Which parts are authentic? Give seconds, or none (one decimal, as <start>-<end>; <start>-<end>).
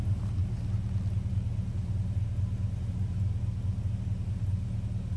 0.0-5.2